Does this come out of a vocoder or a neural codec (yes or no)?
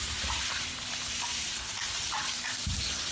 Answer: yes